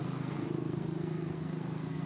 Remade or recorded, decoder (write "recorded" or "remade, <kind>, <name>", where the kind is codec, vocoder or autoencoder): remade, codec, SNAC